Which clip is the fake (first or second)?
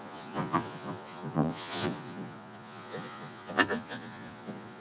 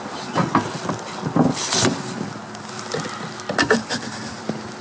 first